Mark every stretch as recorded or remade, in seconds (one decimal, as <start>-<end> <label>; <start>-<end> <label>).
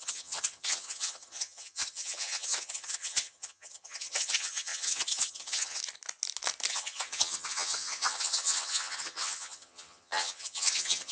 0.0-5.8 remade; 5.8-6.7 recorded; 6.7-11.1 remade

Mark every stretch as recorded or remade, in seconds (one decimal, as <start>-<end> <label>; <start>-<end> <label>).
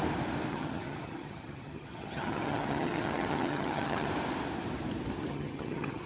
0.0-0.5 recorded; 0.5-4.1 remade; 4.1-5.3 recorded; 5.3-6.1 remade